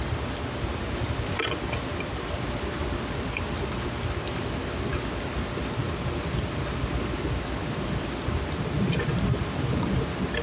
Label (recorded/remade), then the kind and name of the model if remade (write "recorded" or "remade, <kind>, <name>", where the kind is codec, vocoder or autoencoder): recorded